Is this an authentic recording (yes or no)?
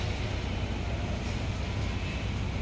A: yes